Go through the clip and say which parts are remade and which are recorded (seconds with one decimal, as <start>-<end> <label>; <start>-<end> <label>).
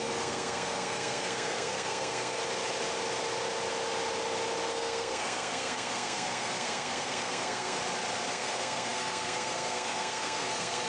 0.0-2.4 remade; 2.4-4.7 recorded; 4.7-7.8 remade; 7.8-8.3 recorded; 8.3-10.9 remade